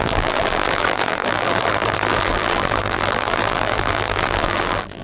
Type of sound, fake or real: fake